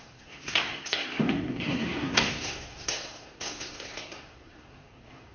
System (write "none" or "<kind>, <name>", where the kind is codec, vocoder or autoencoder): codec, SNAC